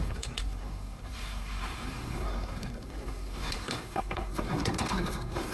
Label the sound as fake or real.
fake